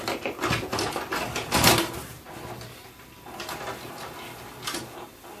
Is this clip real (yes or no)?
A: yes